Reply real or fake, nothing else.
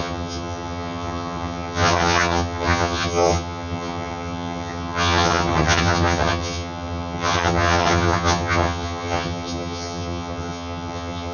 fake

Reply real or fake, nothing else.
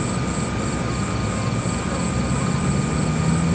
real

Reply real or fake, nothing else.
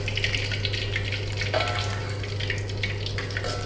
real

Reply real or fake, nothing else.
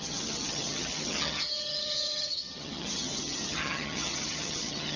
fake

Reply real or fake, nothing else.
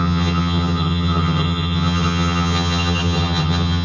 fake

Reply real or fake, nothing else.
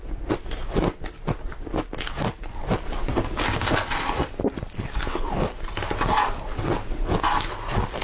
real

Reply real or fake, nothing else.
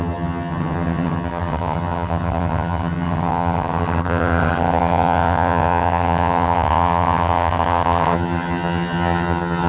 fake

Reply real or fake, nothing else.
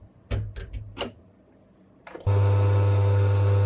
real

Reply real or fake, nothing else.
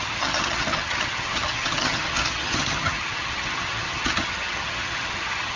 fake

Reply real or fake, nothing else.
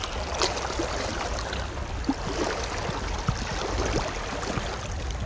real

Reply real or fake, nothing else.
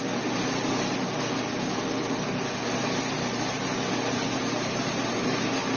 real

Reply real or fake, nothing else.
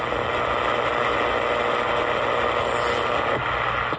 real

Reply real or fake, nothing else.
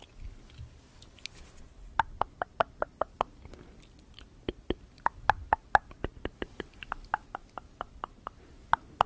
real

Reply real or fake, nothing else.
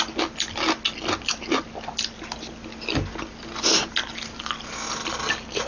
real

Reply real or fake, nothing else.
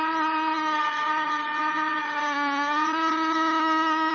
fake